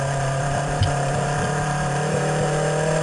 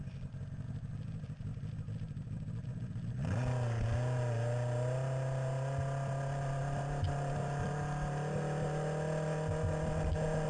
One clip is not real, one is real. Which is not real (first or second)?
first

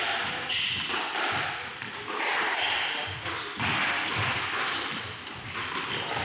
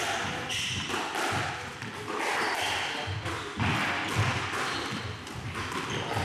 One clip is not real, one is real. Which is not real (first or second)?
first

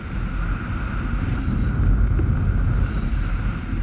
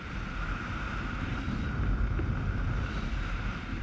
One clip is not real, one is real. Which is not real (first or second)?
second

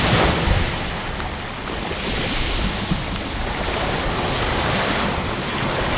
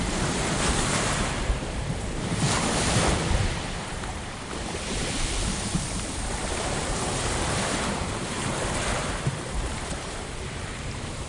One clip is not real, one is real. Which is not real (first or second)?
second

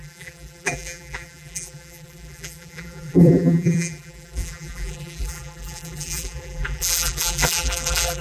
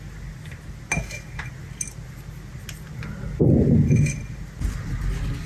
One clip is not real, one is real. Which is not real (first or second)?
first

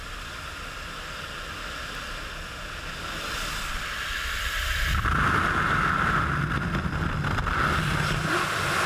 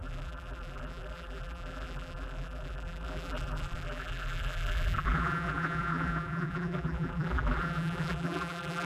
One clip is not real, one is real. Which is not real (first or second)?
second